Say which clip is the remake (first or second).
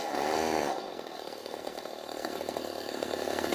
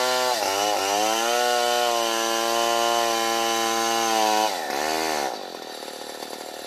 first